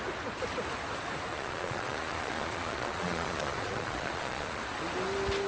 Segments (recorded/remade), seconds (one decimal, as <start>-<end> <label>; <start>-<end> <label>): 0.0-1.3 recorded; 1.3-4.6 remade; 4.6-5.5 recorded